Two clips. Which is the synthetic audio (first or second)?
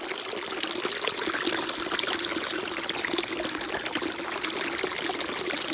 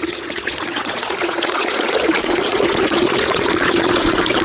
second